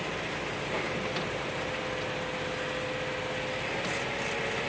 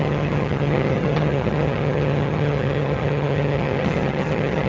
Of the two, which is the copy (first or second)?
second